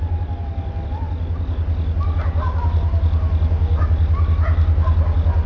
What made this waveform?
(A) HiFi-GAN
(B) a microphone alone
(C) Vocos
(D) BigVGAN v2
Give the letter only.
B